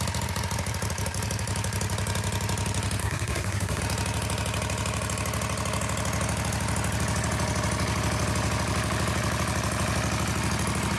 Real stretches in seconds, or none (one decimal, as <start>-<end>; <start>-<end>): 0.0-3.0; 3.8-11.0

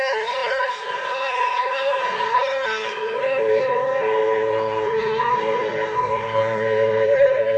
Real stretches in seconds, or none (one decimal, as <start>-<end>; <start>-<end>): none

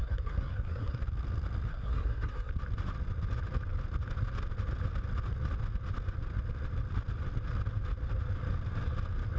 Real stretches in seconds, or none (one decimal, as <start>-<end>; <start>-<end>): 1.0-1.7; 2.5-9.4

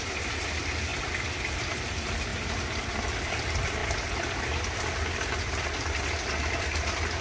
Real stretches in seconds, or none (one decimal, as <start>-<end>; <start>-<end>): 0.9-1.9; 2.3-2.9; 3.8-6.6